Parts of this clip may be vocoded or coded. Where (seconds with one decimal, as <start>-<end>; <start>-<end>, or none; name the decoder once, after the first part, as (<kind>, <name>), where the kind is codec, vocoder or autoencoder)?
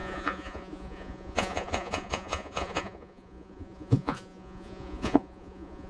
0.0-5.9 (vocoder, Vocos)